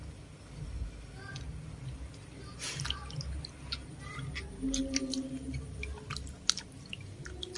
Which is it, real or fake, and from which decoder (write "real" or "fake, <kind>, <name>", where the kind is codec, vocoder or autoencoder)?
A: real